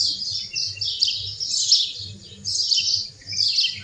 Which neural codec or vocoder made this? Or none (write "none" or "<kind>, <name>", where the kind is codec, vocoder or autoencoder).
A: none